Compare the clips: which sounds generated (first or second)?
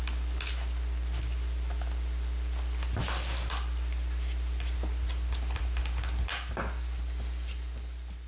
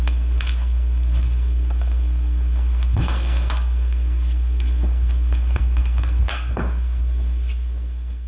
second